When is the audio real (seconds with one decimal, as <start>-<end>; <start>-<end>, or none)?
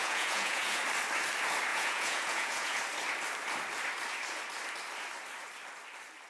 0.8-1.7; 2.8-6.3